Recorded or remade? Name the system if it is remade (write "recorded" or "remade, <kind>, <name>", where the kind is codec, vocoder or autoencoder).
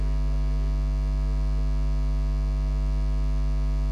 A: recorded